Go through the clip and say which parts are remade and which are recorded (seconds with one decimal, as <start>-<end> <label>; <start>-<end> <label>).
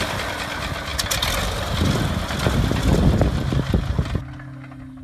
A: 0.0-5.0 recorded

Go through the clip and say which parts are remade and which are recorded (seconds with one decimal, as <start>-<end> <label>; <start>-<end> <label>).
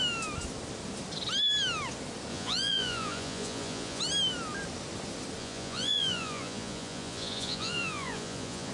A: 0.0-2.3 recorded; 2.3-4.0 remade; 4.0-5.4 recorded; 5.4-8.7 remade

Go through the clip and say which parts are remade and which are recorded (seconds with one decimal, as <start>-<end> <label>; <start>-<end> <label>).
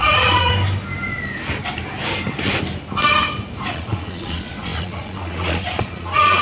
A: 0.0-0.5 remade; 0.5-3.7 recorded; 3.7-6.4 remade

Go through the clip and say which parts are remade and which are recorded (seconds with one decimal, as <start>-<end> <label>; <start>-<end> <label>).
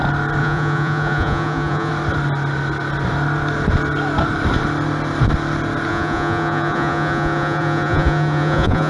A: 0.0-0.4 recorded; 0.4-1.9 remade; 1.9-5.9 recorded; 5.9-8.9 remade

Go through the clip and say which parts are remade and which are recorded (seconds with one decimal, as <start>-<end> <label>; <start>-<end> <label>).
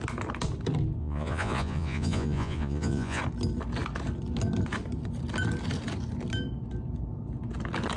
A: 0.0-1.0 recorded; 1.0-3.2 remade; 3.2-8.0 recorded